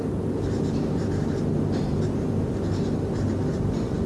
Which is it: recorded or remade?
recorded